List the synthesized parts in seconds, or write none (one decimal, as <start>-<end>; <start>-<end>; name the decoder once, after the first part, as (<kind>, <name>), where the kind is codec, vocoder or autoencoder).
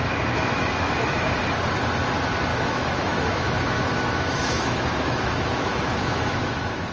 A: 0.0-1.4 (autoencoder, DAC-VAE); 2.5-6.9